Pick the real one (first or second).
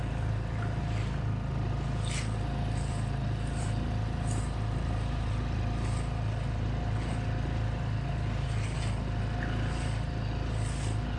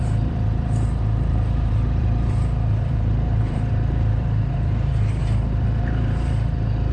first